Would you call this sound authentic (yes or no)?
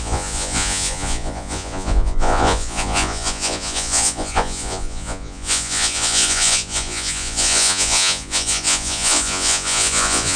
no